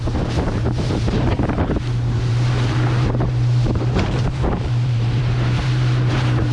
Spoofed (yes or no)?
yes